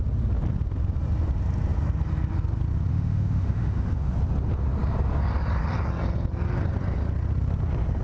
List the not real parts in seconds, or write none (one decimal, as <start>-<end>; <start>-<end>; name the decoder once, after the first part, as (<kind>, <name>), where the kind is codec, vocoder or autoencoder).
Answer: 2.9-4.1 (autoencoder, DAC-VAE)